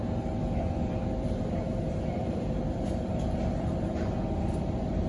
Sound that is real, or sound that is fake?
fake